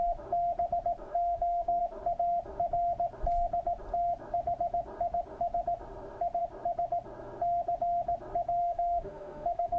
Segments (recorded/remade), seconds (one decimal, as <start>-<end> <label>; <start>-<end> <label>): 0.0-1.1 recorded; 1.1-1.8 remade; 1.8-8.6 recorded; 8.6-9.8 remade